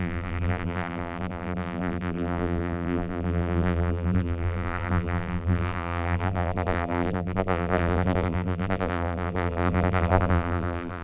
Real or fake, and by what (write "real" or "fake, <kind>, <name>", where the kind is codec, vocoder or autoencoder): fake, vocoder, BigVGAN v2